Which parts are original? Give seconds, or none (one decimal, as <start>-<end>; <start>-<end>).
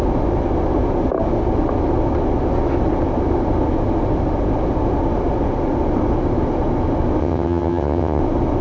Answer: 0.0-7.2; 8.2-8.6